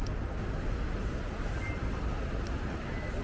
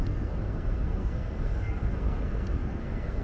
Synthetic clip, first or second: second